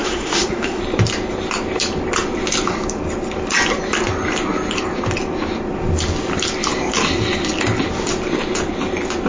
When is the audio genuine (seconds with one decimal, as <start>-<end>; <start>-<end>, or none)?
0.8-9.3

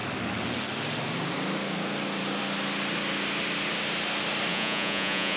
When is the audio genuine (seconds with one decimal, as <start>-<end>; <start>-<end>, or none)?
0.0-4.5

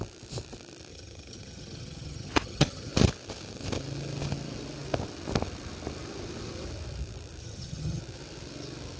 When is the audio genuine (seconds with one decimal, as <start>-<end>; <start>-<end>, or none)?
0.0-0.9; 2.9-7.4; 8.0-9.0

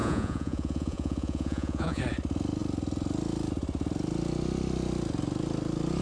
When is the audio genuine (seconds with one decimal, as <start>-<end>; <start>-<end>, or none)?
2.0-6.0

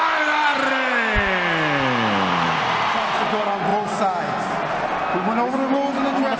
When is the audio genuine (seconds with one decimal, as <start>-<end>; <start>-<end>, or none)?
0.0-6.4

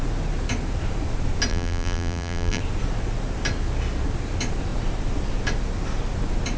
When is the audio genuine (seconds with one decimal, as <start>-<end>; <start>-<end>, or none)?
0.0-1.5; 2.6-6.6

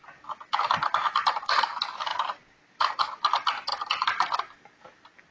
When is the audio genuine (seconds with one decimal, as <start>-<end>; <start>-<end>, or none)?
0.0-1.2; 1.7-2.1; 2.9-3.7; 4.6-5.3